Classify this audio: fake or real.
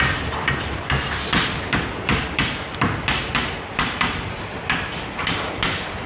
real